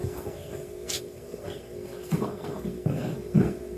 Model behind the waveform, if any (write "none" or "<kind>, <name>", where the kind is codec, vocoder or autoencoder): codec, SNAC